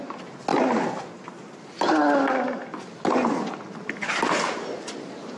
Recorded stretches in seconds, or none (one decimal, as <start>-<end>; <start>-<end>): 0.0-5.4